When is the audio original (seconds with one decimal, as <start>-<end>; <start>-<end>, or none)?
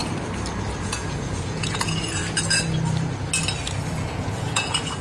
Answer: 0.0-0.8; 2.2-3.9